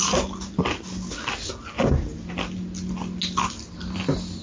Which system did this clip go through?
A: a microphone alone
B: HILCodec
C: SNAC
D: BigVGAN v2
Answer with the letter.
A